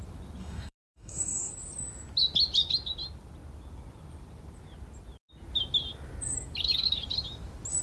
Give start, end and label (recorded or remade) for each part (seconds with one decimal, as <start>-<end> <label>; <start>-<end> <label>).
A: 0.0-0.4 recorded; 0.4-1.5 remade; 1.5-7.8 recorded